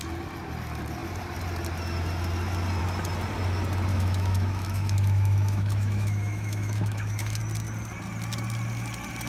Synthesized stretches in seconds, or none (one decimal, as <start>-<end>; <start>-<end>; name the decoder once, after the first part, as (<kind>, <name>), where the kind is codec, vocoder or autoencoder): 3.9-7.4 (autoencoder, DAC-VAE)